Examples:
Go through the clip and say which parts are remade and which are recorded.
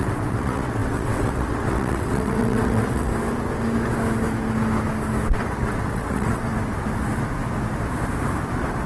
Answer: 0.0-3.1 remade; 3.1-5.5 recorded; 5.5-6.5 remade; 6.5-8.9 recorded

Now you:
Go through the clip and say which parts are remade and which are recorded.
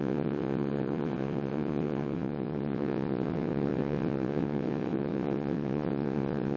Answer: 0.0-6.6 remade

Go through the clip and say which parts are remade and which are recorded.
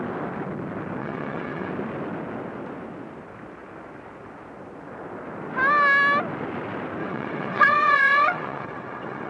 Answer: 0.0-1.0 recorded; 1.0-1.7 remade; 1.7-7.0 recorded; 7.0-9.3 remade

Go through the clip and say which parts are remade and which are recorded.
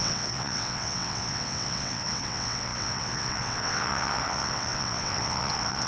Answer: 0.0-5.9 remade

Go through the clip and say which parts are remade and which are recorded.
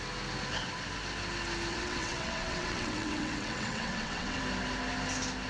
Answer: 0.0-1.7 recorded; 1.7-4.4 remade; 4.4-5.5 recorded